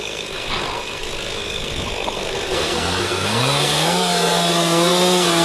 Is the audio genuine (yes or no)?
no